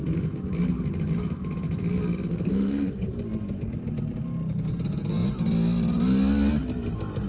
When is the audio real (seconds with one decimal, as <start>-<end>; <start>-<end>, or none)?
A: 0.0-2.3; 3.1-7.3